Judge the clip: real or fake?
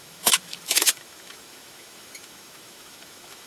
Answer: fake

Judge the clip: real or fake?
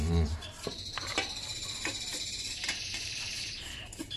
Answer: fake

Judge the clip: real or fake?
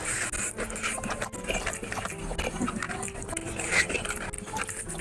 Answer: real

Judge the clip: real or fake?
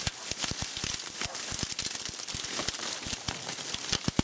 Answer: real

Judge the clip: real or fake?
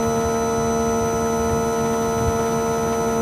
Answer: real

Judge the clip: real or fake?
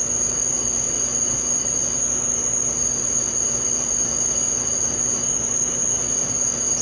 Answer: real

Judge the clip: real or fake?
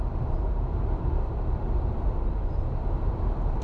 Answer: fake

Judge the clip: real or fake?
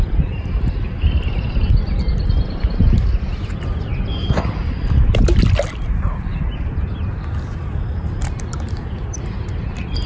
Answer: real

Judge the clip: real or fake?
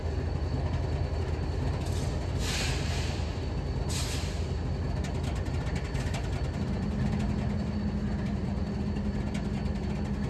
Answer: real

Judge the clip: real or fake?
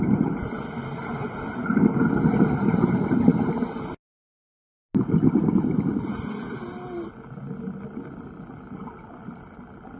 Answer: real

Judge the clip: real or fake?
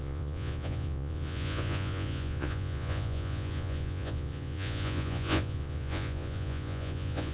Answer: fake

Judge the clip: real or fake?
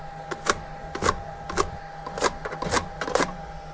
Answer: real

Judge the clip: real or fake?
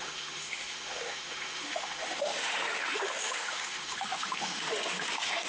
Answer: fake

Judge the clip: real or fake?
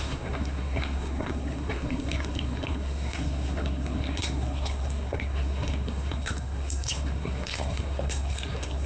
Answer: fake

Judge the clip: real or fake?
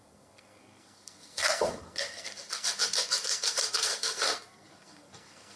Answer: fake